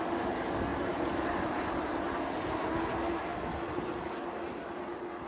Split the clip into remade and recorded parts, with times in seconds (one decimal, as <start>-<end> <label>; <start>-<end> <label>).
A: 0.0-0.7 recorded; 0.7-1.9 remade; 1.9-5.3 recorded